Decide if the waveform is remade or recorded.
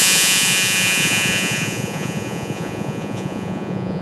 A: remade